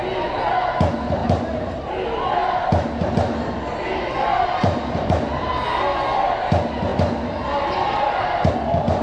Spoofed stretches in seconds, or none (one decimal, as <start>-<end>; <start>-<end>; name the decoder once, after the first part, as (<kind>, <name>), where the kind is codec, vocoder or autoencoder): 1.2-1.9 (vocoder, BigVGAN v2); 2.4-3.4; 4.3-5.5